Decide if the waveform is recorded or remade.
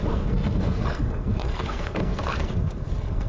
remade